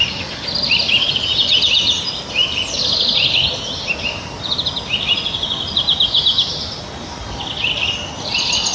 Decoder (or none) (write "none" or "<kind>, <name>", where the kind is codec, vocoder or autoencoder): none